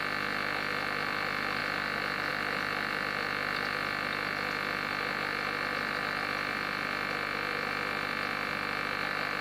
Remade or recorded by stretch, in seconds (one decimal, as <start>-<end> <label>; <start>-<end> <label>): 0.0-9.4 recorded